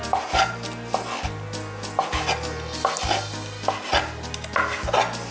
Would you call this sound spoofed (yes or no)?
no